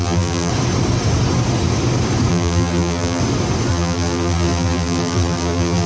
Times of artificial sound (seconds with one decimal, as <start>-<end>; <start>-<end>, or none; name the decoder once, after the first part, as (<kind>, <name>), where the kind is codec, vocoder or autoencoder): 0.0-0.5 (vocoder, BigVGAN v2); 2.3-3.2; 3.7-5.9